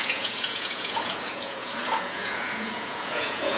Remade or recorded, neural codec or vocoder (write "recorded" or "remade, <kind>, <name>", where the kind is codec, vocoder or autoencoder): remade, vocoder, Vocos